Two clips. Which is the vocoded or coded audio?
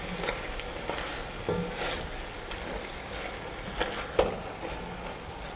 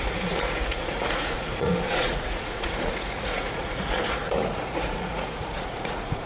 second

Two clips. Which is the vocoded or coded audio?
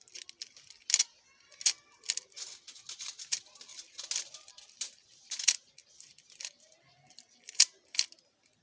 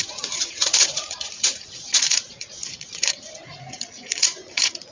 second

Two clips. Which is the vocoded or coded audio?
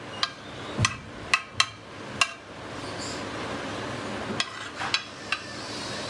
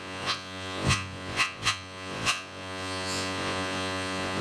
second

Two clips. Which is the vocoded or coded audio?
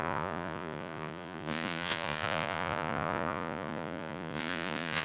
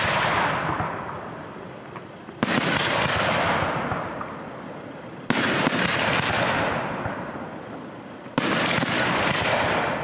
first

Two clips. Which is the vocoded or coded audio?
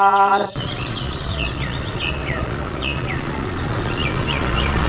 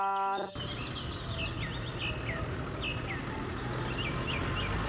first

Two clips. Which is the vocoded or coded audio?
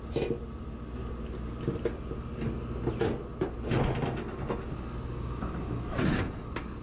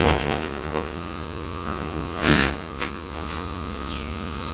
second